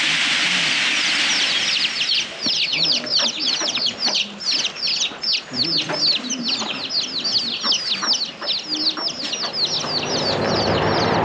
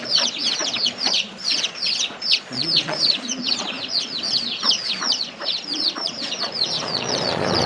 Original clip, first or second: first